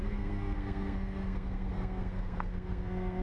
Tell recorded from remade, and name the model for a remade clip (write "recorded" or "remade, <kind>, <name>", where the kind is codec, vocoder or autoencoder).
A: remade, codec, SNAC